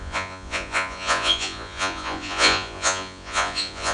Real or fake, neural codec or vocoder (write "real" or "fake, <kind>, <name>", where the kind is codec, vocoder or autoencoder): fake, vocoder, Vocos